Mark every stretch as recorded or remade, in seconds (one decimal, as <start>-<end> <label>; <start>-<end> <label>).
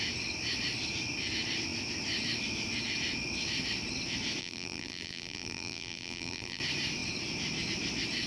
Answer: 0.0-4.4 recorded; 4.4-6.6 remade; 6.6-8.3 recorded